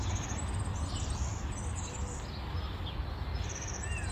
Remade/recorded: recorded